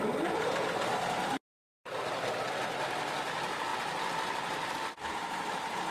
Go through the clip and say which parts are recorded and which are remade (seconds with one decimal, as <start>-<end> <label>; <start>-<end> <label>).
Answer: 0.0-3.7 remade; 3.7-5.1 recorded; 5.1-5.9 remade